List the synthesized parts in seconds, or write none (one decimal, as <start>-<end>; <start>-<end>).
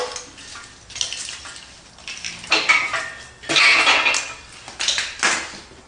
2.3-3.0